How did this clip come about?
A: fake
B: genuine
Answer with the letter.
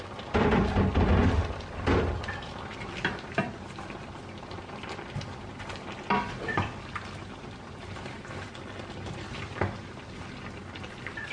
A